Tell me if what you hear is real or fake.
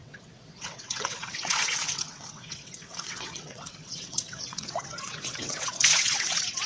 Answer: fake